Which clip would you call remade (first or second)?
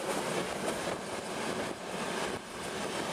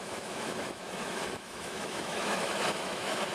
second